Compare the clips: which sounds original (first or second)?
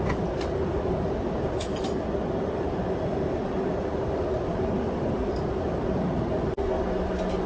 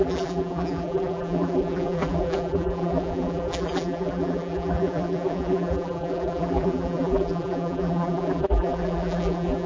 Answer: first